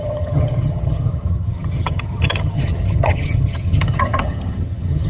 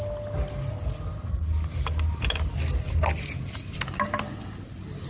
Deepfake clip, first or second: first